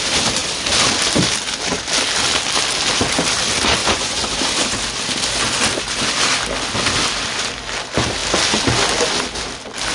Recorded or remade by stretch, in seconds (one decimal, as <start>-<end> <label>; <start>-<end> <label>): 0.0-3.8 recorded; 3.8-4.3 remade; 4.3-9.9 recorded